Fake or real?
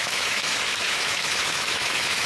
fake